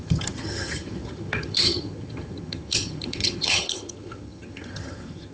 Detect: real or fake fake